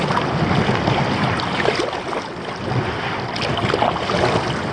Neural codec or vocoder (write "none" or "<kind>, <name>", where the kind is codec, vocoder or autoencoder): none